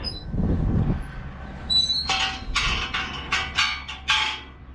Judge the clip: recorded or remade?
recorded